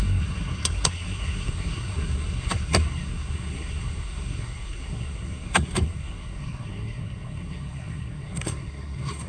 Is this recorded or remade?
remade